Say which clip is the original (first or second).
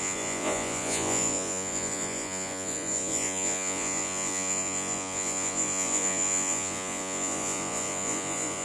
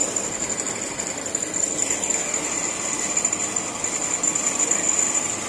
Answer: second